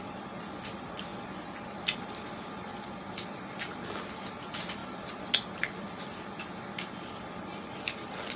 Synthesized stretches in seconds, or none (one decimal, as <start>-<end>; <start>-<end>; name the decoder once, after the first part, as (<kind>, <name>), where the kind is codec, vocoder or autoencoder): none